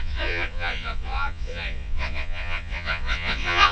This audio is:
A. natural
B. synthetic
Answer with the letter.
B